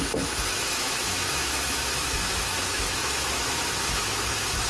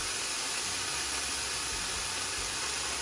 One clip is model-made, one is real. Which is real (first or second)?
second